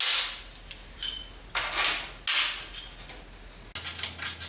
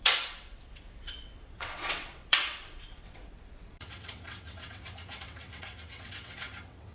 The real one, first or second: first